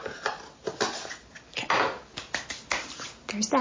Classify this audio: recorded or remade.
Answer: recorded